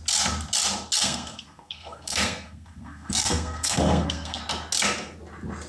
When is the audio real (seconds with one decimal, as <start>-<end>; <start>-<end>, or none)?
0.0-1.0; 4.4-5.7